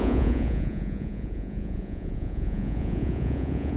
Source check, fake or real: fake